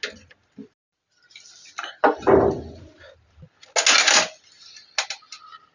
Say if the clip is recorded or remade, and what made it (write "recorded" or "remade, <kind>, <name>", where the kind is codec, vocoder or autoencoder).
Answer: recorded